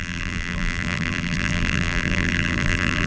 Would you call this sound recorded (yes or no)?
no